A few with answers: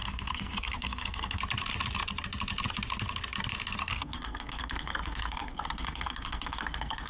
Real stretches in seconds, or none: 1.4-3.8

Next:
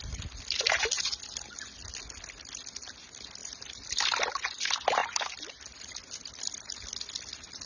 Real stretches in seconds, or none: 0.0-3.4; 4.2-7.7